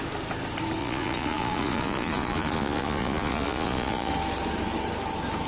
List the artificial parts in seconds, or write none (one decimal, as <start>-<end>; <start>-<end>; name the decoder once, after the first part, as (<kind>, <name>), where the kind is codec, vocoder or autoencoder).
0.8-4.1 (vocoder, Vocos)